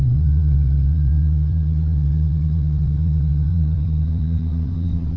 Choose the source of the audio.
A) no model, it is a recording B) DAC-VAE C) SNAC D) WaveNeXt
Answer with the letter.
D